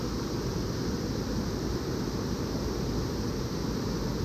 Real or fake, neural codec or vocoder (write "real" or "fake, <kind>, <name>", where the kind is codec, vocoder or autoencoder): real